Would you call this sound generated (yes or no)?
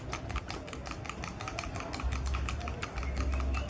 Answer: no